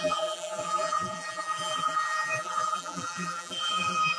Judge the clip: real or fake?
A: fake